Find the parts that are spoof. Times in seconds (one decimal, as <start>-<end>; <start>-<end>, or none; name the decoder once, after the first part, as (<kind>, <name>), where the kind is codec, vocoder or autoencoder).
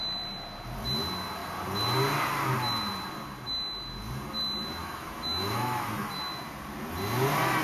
4.8-6.1 (autoencoder, DAC-VAE)